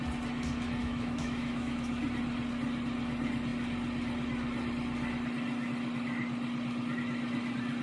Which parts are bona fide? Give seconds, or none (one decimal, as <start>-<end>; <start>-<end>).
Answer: 0.0-0.8; 1.9-7.8